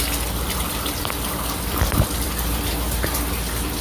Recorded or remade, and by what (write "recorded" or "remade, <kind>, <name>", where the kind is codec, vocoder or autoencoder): remade, vocoder, BigVGAN v2